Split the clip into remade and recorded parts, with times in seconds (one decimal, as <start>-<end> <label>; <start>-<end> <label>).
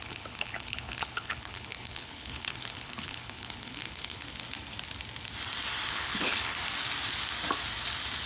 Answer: 0.0-4.2 remade; 4.2-5.9 recorded; 5.9-6.5 remade; 6.5-8.3 recorded